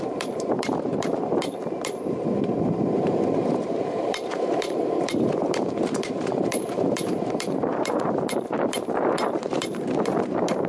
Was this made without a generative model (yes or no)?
no